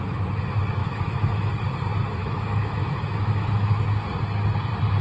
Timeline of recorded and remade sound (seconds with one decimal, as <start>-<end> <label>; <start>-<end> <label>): 0.0-0.8 recorded; 0.8-1.5 remade; 1.5-2.2 recorded; 2.2-3.8 remade; 3.8-5.0 recorded

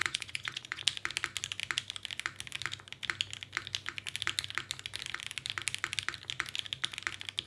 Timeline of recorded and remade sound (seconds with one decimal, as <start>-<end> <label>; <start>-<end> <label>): 0.0-0.8 remade; 0.8-7.5 recorded

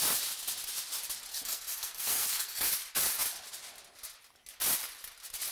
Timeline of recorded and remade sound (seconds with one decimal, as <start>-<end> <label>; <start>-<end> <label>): 0.0-1.3 recorded; 1.3-2.7 remade; 2.7-5.5 recorded

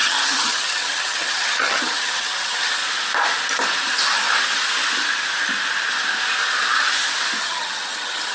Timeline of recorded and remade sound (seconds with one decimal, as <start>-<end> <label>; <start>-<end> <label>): 0.0-2.8 remade; 2.8-7.4 recorded; 7.4-8.3 remade

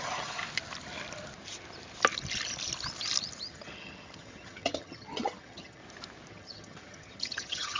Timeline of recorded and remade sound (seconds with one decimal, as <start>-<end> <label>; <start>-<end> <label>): 0.0-0.4 remade; 0.4-3.4 recorded; 3.4-5.8 remade; 5.8-6.3 recorded; 6.3-7.8 remade

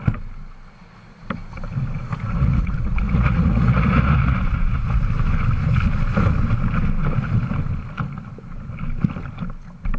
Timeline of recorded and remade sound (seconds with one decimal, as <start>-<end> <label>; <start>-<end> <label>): 0.0-2.1 recorded; 2.1-5.0 remade; 5.0-10.0 recorded